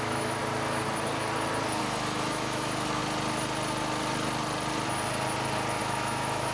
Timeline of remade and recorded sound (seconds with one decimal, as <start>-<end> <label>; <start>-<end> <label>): 0.0-0.4 remade; 0.4-1.8 recorded; 1.8-3.0 remade; 3.0-5.8 recorded; 5.8-6.5 remade